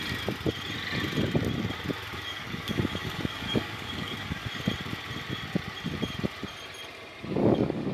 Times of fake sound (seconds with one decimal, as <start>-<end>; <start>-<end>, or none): 2.1-4.6; 7.4-7.9